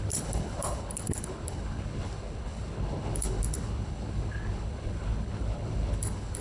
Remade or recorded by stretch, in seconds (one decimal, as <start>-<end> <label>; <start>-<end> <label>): 0.0-6.4 remade